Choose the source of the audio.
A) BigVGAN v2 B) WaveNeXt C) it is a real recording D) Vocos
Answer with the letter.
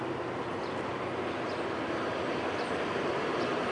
C